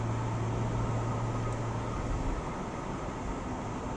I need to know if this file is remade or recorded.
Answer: recorded